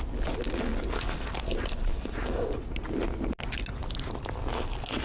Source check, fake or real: real